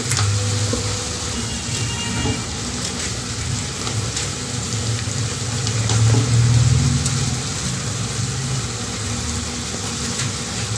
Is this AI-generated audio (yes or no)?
no